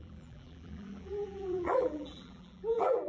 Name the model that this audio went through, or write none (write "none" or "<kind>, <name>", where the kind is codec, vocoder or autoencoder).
vocoder, BigVGAN v2